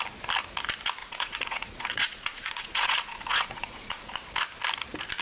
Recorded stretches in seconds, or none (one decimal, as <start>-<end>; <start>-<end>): 0.0-1.0; 4.1-5.2